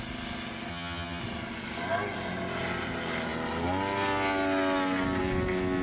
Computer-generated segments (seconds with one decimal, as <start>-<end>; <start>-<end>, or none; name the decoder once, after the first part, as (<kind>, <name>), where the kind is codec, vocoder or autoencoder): 0.7-1.2 (vocoder, HiFi-GAN)